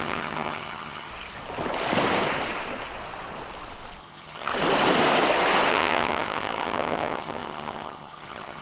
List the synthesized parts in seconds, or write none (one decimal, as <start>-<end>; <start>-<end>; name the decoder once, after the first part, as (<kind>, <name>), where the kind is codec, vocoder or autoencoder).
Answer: 0.0-1.1 (vocoder, HiFi-GAN); 4.0-4.5; 5.7-8.6

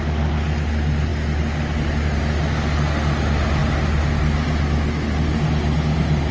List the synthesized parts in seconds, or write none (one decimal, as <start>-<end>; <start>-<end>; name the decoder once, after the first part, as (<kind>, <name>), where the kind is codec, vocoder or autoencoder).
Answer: none

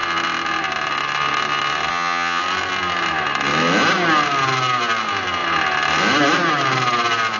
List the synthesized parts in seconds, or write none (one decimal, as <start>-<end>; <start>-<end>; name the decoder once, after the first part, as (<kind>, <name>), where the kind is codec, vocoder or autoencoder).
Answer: 1.9-2.4 (vocoder, HiFi-GAN)

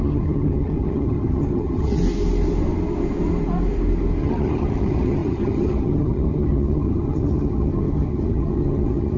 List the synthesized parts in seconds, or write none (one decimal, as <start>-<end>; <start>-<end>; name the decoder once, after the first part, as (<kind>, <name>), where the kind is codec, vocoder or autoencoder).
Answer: 0.0-2.0 (vocoder, HiFi-GAN); 4.2-9.2

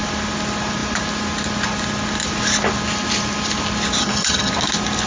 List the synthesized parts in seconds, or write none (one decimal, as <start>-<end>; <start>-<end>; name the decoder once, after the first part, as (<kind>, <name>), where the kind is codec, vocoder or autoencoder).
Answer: 4.0-4.5 (vocoder, HiFi-GAN)

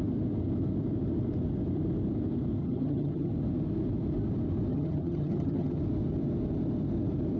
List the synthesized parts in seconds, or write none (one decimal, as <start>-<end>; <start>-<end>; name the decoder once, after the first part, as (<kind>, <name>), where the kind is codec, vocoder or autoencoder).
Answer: 2.6-3.3 (vocoder, HiFi-GAN); 4.7-5.8